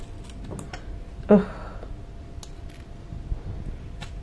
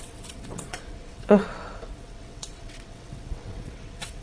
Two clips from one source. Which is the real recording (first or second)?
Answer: first